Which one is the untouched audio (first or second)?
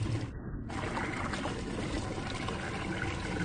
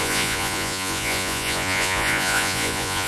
first